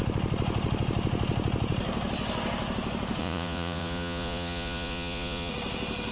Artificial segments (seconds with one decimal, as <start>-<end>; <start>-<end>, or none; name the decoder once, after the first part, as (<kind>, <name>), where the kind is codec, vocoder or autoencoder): 3.2-5.5 (vocoder, Vocos)